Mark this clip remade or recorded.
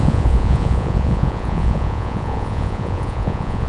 remade